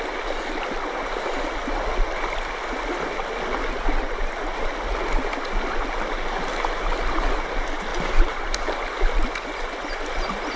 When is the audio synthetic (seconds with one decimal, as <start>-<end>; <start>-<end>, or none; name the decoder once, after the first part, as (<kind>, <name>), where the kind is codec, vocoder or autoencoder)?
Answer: 7.9-9.0 (vocoder, BigVGAN v2)